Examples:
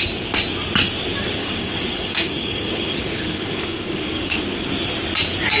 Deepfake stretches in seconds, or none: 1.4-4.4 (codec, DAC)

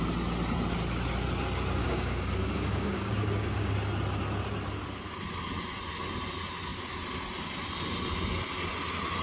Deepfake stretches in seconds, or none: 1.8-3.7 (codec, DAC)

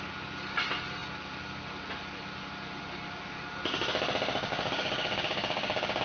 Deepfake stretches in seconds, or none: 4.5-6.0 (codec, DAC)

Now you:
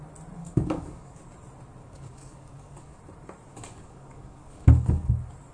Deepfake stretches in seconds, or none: 0.4-1.2 (codec, DAC); 1.8-3.0; 3.5-5.1